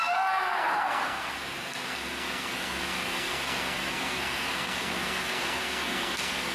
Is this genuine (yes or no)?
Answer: no